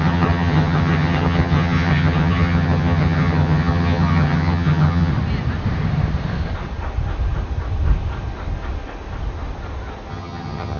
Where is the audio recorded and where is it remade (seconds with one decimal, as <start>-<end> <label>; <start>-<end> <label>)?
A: 0.0-5.1 remade; 5.1-10.1 recorded; 10.1-10.8 remade